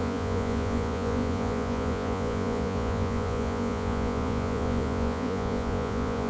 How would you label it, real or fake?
fake